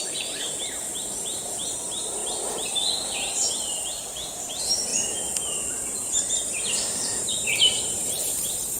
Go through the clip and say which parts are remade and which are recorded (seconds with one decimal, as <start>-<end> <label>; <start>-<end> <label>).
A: 0.0-2.2 remade; 2.2-3.5 recorded; 3.5-4.9 remade; 4.9-6.1 recorded; 6.1-8.8 remade